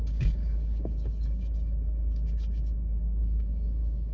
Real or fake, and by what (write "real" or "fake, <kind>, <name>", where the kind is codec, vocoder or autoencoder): fake, codec, DAC